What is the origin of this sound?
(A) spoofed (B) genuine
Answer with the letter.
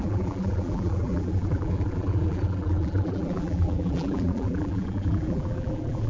A